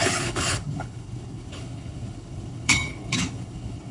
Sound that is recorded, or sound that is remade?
remade